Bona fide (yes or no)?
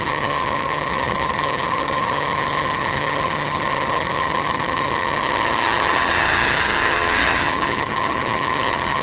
no